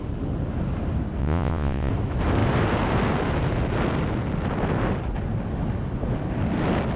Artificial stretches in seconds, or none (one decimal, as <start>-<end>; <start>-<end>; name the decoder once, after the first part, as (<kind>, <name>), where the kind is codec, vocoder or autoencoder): 1.2-1.9 (vocoder, Vocos)